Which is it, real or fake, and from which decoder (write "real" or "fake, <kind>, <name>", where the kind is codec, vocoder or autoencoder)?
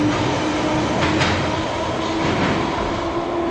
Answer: real